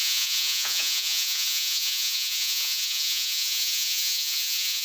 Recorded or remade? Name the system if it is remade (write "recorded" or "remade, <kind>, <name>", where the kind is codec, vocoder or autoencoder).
remade, vocoder, Vocos